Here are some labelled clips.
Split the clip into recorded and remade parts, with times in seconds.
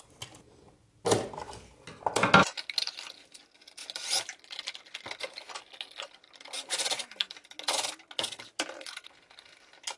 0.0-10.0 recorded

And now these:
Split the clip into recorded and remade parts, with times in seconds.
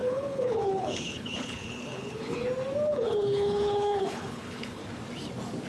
0.0-2.4 remade; 2.4-2.9 recorded; 2.9-4.8 remade; 4.8-5.7 recorded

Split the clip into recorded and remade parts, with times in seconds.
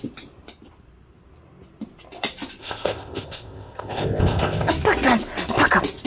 0.0-2.6 recorded; 2.6-4.7 remade; 4.7-6.1 recorded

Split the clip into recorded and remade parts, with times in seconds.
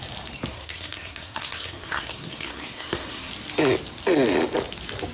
0.0-0.5 recorded; 0.5-3.3 remade; 3.3-5.1 recorded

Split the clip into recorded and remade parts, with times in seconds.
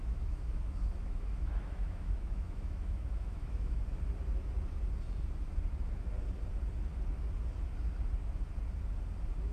0.0-3.8 remade; 3.8-9.5 recorded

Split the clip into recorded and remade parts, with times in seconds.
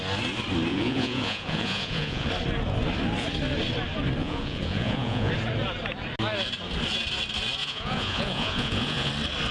0.0-0.7 recorded; 0.7-2.3 remade; 2.3-4.2 recorded; 4.2-5.3 remade; 5.3-7.6 recorded; 7.6-9.1 remade; 9.1-9.5 recorded